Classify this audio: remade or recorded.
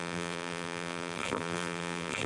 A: remade